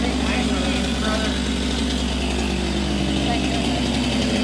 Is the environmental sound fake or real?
real